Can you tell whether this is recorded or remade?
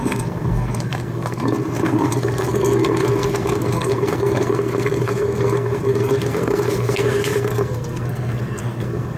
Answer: remade